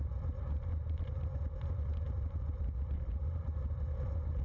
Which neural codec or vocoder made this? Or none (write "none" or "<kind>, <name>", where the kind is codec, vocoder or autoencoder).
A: none